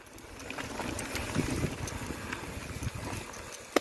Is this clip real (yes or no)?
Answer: yes